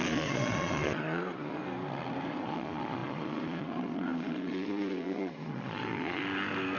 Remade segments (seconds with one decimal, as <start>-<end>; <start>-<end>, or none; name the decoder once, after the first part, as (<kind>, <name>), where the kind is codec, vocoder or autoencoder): 0.0-1.6 (vocoder, Vocos); 2.3-6.2